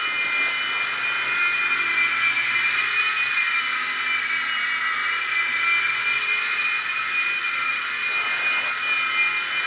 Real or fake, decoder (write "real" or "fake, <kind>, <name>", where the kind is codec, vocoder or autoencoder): real